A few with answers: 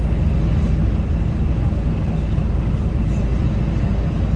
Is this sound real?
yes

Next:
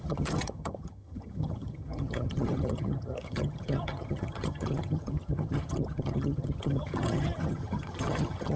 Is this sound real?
no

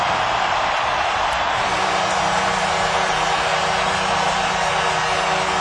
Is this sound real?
yes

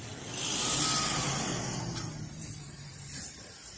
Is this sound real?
yes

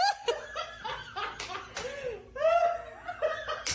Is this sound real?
yes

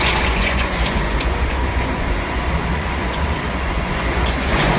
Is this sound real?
no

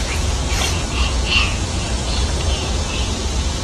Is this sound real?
no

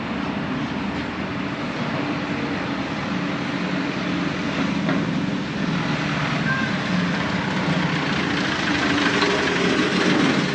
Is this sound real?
yes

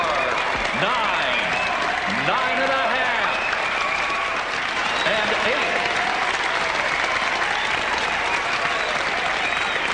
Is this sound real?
yes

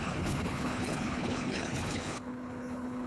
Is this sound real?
no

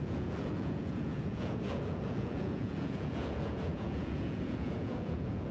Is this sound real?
no